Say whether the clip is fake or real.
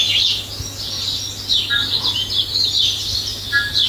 real